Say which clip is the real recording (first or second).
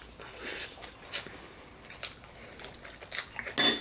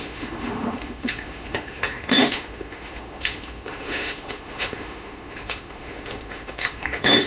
first